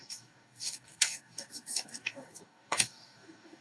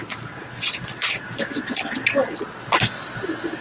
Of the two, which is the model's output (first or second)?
first